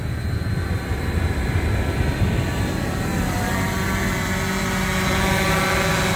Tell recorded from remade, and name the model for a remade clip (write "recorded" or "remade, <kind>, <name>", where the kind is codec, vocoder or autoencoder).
recorded